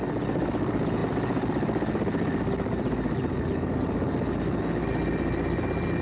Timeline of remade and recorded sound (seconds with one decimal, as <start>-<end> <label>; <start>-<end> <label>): 0.0-6.0 recorded